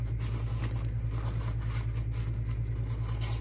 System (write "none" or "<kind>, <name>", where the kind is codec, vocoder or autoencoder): none